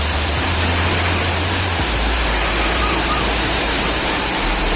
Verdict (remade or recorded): remade